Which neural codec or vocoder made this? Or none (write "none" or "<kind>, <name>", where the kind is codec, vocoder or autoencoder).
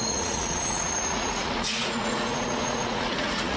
vocoder, Vocos